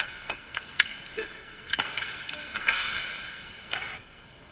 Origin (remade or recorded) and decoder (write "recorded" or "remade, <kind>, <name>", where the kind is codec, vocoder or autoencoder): remade, codec, SNAC